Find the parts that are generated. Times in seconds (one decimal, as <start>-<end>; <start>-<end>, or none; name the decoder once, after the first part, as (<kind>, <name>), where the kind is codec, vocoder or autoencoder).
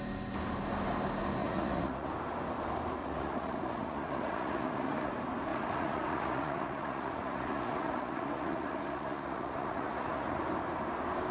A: 1.4-2.1 (vocoder, Vocos); 3.0-5.1; 5.5-10.4